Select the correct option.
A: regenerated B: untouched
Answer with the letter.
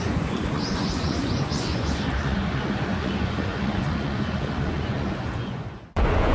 A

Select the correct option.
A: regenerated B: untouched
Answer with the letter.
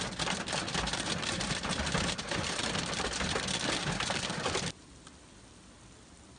B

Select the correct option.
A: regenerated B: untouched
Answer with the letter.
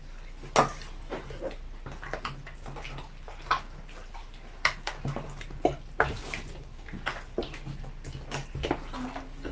B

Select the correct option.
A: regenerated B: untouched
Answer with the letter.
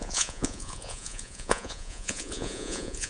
A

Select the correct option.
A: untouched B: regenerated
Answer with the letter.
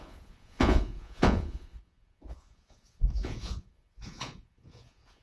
B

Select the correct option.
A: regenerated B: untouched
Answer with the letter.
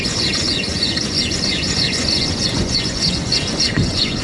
A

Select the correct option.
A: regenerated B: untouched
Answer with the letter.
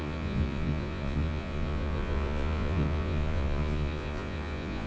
A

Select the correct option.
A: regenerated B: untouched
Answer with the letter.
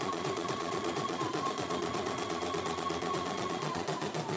A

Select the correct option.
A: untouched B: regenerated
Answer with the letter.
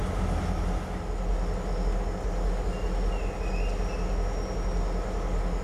A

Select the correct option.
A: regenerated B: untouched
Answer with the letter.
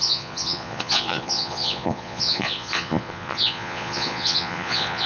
A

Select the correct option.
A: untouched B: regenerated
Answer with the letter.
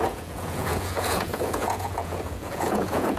B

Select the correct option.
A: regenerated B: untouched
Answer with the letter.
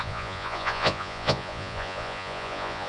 A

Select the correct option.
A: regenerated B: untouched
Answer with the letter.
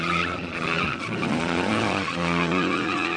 A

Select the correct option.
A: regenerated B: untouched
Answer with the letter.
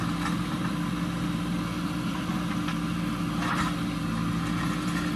B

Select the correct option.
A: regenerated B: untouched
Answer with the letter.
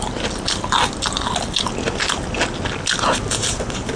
B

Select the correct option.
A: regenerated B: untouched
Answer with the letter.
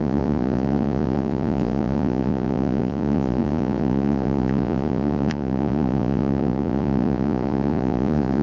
A